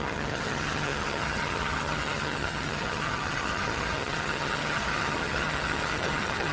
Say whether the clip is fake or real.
fake